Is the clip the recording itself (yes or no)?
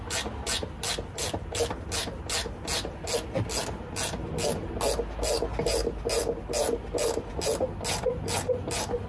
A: yes